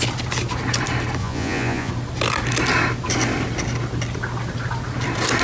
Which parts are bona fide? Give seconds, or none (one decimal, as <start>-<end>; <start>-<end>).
0.0-1.2; 1.9-5.4